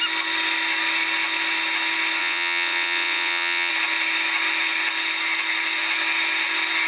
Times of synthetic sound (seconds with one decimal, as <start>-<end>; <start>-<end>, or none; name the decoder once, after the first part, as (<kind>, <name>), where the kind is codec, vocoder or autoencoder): 2.2-3.7 (vocoder, WaveNeXt)